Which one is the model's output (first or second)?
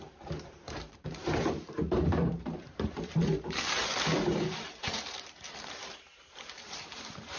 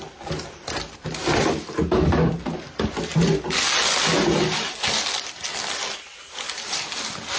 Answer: first